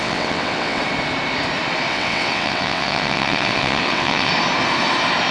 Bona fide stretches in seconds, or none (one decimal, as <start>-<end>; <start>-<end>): 0.8-1.9; 4.3-5.3